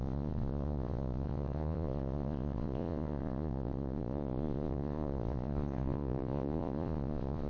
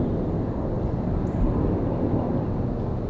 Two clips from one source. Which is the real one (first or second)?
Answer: second